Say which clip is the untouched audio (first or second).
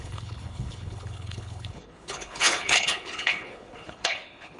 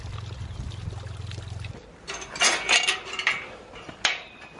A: second